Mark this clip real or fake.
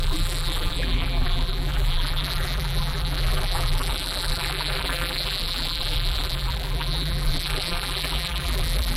fake